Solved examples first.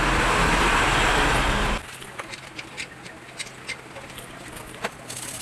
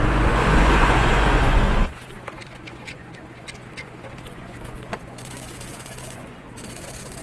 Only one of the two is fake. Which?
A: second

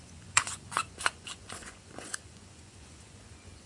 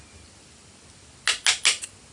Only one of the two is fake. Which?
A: first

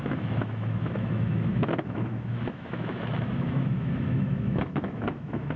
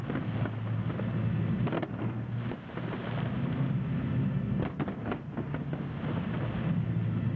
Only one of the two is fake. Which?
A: first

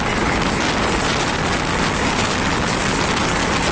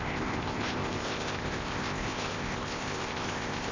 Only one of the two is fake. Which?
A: second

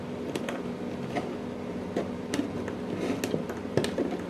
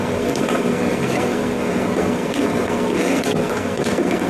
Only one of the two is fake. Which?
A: second